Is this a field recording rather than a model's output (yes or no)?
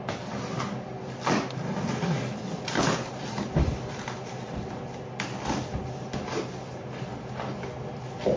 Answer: yes